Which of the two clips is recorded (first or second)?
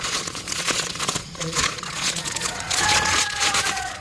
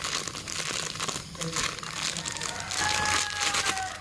second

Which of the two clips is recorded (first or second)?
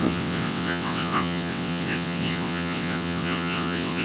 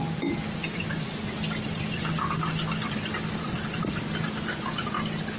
second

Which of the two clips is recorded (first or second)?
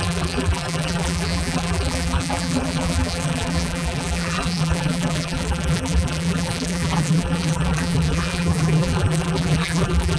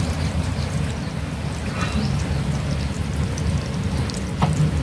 second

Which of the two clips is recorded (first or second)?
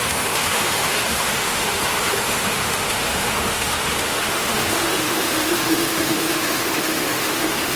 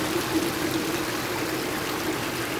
second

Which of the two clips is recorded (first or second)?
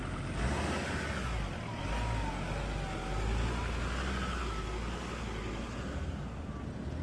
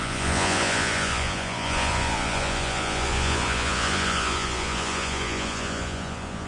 first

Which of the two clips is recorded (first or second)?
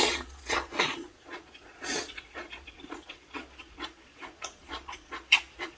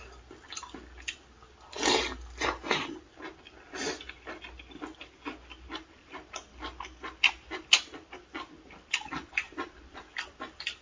second